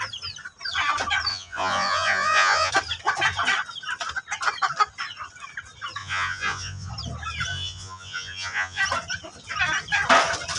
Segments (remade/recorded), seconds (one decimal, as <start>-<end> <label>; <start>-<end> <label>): 0.0-1.3 recorded; 1.3-2.7 remade; 2.7-6.0 recorded; 6.0-6.9 remade; 6.9-7.5 recorded; 7.5-8.8 remade; 8.8-10.6 recorded